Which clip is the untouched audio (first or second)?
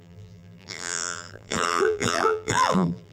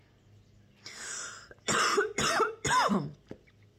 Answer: second